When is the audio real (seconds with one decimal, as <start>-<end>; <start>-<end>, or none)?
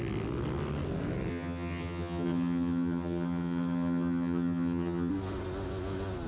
0.0-1.3; 5.1-6.3